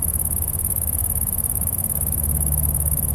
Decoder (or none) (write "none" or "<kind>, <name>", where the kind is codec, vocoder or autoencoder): autoencoder, DAC-VAE